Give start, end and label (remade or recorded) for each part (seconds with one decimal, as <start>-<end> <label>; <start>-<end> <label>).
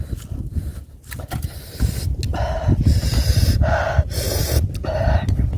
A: 0.0-5.6 recorded